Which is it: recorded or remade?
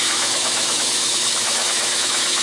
remade